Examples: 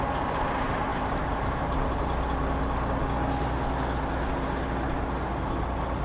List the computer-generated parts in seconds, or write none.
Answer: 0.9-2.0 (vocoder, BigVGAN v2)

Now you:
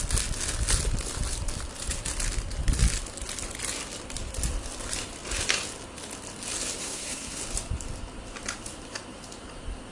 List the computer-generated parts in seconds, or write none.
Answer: 6.8-7.4 (codec, SNAC)